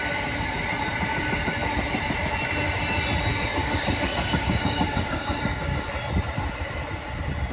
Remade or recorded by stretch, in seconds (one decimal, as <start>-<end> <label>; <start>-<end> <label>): 0.0-3.3 recorded; 3.3-5.9 remade; 5.9-7.5 recorded